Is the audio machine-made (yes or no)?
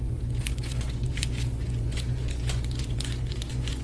yes